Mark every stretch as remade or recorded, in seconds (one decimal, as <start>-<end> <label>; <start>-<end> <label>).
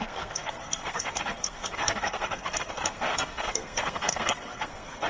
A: 0.0-5.1 remade